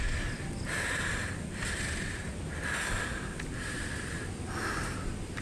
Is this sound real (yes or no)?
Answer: yes